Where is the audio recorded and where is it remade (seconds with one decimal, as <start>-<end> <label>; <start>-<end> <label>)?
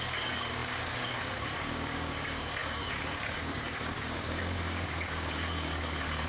0.0-6.3 remade